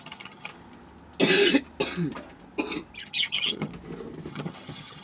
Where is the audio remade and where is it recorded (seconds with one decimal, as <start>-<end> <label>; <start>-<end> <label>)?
0.0-0.5 remade; 0.5-3.0 recorded; 3.0-3.7 remade; 3.7-4.3 recorded; 4.3-5.0 remade